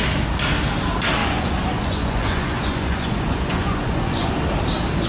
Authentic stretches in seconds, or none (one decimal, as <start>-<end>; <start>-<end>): 0.0-1.2; 4.3-5.1